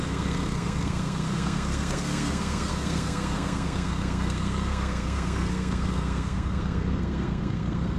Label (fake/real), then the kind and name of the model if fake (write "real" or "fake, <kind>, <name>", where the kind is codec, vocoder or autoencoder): fake, codec, SNAC